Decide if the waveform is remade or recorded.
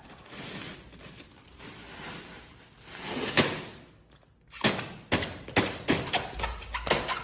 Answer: recorded